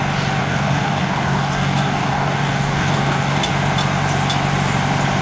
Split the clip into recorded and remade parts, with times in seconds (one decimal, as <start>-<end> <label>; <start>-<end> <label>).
0.0-0.4 recorded; 0.4-3.5 remade; 3.5-5.2 recorded